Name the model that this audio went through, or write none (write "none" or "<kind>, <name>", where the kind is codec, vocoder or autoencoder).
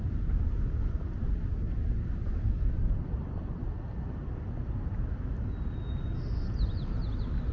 none